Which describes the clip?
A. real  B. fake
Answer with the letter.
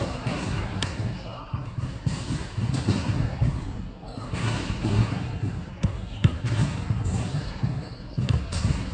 B